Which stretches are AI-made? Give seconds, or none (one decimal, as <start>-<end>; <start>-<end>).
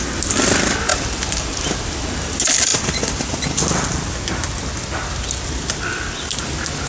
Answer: none